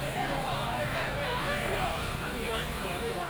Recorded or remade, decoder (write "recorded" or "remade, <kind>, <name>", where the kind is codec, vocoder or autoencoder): remade, codec, DAC